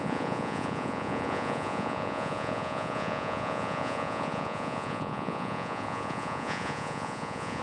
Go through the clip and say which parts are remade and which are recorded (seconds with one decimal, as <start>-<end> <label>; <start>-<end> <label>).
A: 0.0-7.6 remade